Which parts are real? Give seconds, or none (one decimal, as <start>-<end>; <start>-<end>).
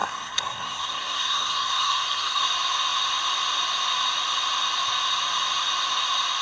2.5-6.4